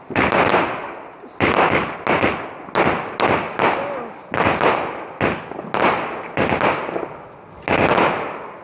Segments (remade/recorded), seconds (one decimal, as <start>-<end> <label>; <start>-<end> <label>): 0.0-8.6 recorded